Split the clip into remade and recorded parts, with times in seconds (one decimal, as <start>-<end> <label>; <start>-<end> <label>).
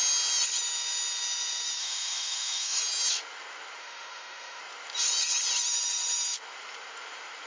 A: 0.0-1.8 recorded; 1.8-2.8 remade; 2.8-3.8 recorded; 3.8-4.6 remade; 4.6-7.5 recorded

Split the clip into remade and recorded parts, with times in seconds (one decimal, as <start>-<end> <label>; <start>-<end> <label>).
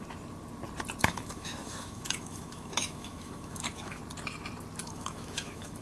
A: 0.0-1.0 recorded; 1.0-4.0 remade; 4.0-4.8 recorded; 4.8-5.8 remade